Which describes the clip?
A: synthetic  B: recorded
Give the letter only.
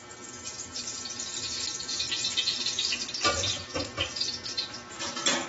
B